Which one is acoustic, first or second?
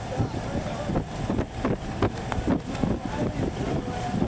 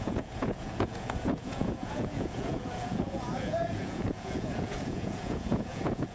first